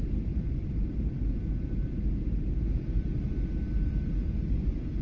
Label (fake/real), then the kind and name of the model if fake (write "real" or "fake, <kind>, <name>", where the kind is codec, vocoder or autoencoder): real